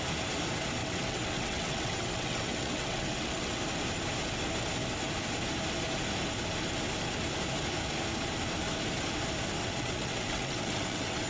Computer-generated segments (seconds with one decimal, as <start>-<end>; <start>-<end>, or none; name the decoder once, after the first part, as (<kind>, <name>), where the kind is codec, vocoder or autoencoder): 0.8-3.6 (vocoder, WaveNeXt); 9.6-11.3